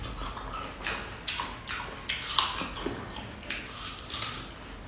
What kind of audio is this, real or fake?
real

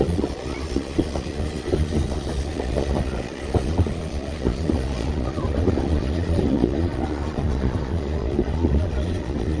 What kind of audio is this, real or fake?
fake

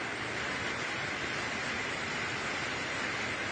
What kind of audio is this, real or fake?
real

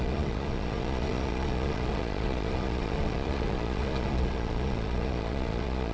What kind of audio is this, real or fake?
fake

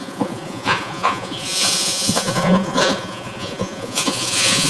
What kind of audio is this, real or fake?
fake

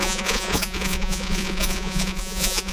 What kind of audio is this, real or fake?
fake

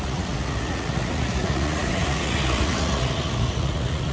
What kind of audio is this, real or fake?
fake